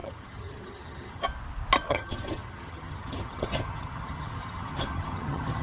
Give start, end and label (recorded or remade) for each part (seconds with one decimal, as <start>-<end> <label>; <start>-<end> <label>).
0.0-1.2 remade; 1.2-1.9 recorded; 1.9-5.6 remade